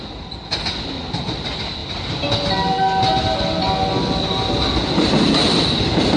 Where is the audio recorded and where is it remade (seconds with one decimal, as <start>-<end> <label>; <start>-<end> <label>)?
0.0-6.2 recorded